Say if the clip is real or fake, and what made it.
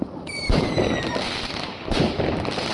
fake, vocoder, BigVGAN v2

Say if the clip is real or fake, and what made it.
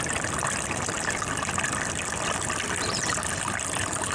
real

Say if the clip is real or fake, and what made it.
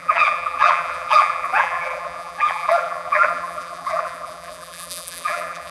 fake, vocoder, BigVGAN v2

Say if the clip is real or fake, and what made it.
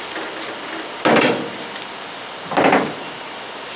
real